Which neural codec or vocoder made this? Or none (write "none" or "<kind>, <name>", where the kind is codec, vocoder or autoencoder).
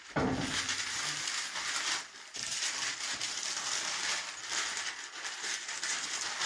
none